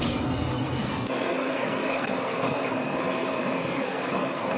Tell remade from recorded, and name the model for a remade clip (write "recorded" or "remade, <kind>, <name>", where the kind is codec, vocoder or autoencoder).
remade, codec, SNAC